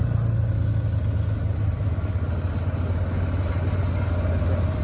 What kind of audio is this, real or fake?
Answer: real